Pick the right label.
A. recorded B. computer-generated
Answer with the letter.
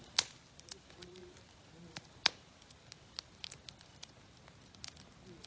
A